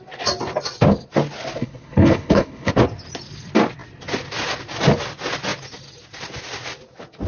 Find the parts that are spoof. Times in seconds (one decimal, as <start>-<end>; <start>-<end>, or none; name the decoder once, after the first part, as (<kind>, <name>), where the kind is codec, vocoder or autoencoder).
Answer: 1.6-2.7 (codec, HILCodec)